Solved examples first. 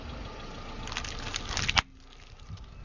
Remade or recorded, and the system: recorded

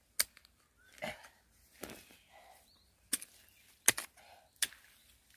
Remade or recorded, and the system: recorded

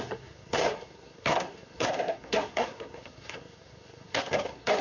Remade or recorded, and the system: remade, codec, SNAC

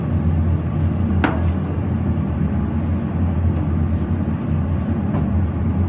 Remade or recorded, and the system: recorded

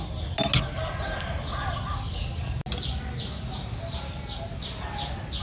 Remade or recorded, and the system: recorded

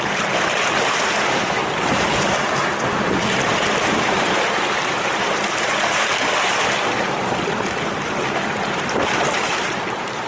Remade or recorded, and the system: remade, vocoder, BigVGAN v2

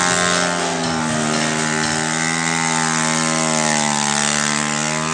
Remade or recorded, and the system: recorded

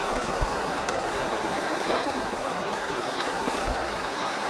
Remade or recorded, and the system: remade, codec, SNAC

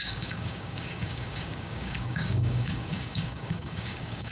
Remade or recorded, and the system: remade, codec, DAC